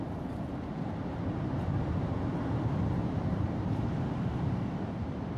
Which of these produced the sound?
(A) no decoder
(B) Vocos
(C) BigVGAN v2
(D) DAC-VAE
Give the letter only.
C